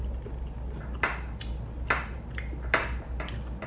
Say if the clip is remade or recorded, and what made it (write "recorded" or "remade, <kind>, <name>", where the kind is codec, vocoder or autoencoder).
recorded